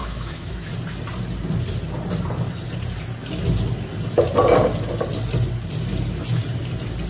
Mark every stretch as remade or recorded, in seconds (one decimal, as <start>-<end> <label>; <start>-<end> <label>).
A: 0.0-0.7 remade; 0.7-7.1 recorded